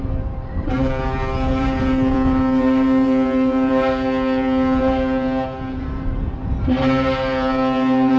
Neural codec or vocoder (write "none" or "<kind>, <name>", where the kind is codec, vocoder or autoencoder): vocoder, BigVGAN v2